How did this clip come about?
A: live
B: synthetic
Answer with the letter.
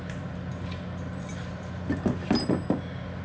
A